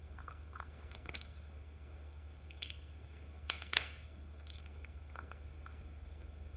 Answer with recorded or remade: remade